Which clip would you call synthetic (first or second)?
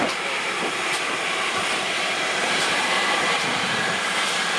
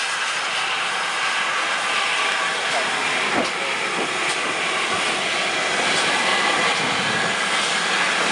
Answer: first